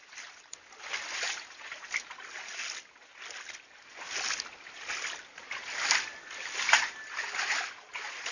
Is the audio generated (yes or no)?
no